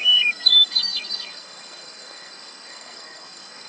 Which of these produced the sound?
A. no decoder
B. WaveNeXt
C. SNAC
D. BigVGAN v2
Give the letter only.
C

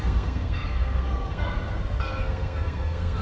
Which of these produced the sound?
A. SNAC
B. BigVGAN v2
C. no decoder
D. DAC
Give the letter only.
A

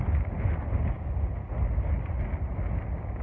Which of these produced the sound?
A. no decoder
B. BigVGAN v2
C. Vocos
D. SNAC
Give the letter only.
A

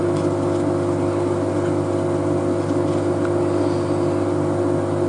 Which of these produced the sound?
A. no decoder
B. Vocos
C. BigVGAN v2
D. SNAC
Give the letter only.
A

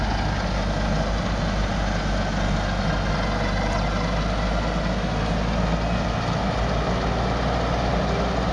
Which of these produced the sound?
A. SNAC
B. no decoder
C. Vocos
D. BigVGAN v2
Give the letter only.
B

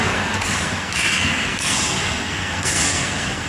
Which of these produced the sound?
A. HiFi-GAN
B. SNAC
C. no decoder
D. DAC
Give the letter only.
B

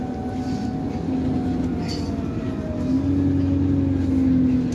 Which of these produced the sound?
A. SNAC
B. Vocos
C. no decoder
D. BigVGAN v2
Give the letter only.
C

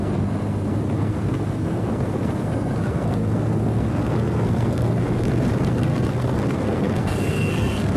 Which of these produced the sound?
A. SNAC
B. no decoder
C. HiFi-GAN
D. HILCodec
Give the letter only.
A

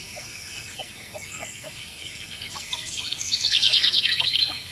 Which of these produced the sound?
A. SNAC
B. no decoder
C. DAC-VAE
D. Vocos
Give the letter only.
A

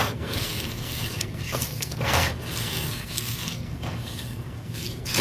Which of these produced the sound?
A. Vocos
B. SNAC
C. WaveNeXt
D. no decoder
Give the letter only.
B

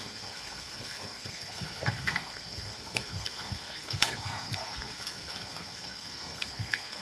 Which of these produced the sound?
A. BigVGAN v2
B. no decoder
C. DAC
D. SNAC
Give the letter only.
D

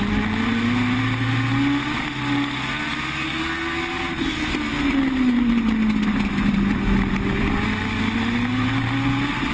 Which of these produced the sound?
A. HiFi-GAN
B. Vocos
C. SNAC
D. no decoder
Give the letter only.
D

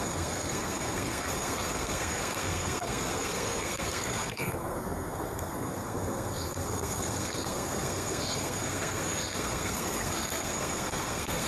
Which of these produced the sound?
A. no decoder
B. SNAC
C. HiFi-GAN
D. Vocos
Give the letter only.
B